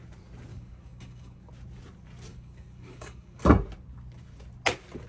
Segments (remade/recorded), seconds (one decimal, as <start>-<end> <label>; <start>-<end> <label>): 0.0-0.5 recorded; 0.5-1.5 remade; 1.5-2.3 recorded; 2.3-3.4 remade; 3.4-5.1 recorded